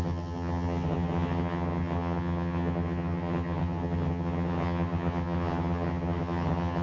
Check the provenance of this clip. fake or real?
fake